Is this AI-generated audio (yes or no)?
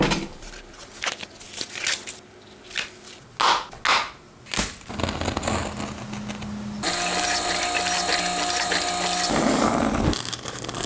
no